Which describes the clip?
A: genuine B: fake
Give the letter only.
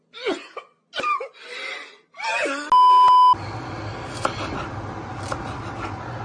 A